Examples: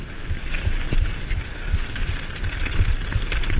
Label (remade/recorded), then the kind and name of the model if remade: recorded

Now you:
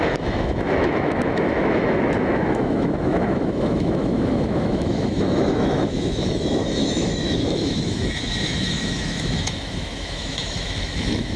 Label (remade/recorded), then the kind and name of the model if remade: remade, autoencoder, DAC-VAE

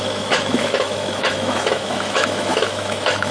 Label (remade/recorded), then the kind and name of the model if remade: remade, autoencoder, DAC-VAE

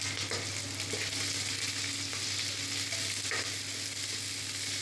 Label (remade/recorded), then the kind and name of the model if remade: recorded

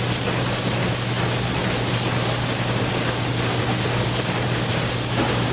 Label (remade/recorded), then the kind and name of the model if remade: recorded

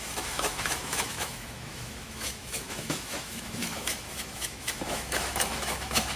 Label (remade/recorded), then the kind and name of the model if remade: remade, autoencoder, DAC-VAE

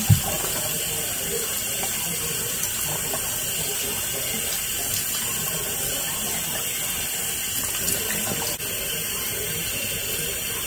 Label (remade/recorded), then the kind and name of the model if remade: recorded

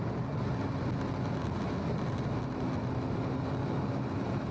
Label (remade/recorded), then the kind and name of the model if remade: recorded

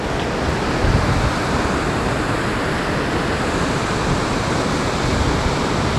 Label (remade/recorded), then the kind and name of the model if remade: recorded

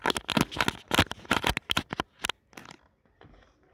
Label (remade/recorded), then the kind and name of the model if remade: recorded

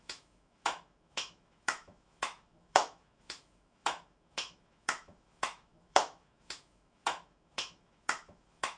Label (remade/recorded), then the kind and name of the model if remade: remade, autoencoder, DAC-VAE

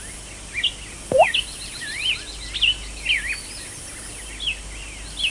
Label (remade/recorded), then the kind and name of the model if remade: recorded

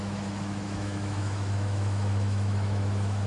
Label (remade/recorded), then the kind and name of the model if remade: remade, autoencoder, DAC-VAE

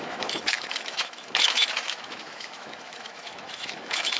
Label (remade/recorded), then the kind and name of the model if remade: remade, autoencoder, DAC-VAE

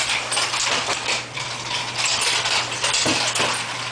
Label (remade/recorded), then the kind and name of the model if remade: recorded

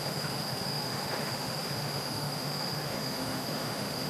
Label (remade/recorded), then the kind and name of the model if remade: remade, autoencoder, DAC-VAE